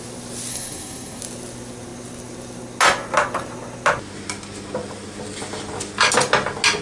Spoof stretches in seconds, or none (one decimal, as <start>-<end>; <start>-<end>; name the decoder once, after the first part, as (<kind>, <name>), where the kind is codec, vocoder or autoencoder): 0.5-1.2 (codec, SNAC)